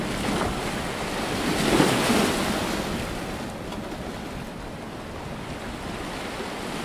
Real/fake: real